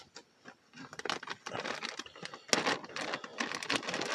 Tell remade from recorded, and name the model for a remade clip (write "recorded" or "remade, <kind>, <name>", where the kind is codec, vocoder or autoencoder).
recorded